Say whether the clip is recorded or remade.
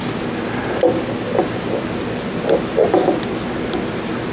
recorded